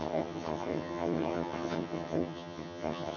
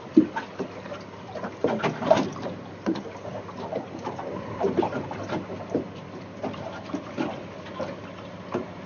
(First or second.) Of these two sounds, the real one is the second